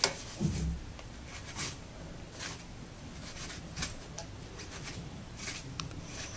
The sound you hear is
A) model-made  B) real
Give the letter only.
B